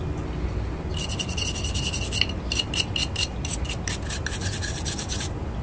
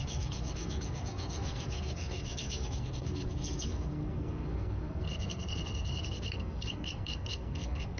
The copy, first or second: second